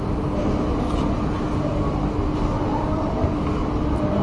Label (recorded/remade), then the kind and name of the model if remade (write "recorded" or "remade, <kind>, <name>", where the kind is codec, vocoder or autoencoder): recorded